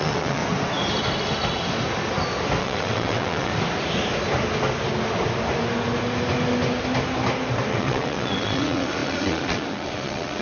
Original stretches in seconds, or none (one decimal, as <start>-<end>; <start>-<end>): 0.4-2.6; 3.5-7.7